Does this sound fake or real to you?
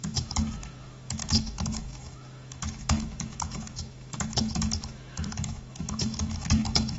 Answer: fake